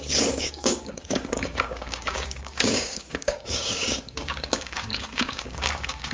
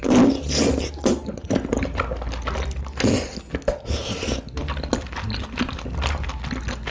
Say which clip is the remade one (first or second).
first